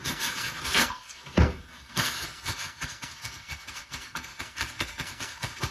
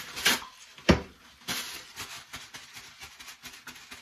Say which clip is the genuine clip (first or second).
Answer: second